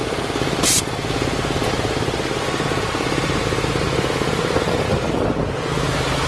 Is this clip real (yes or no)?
yes